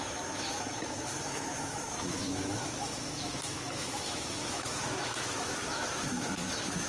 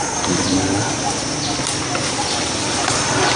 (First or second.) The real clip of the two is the second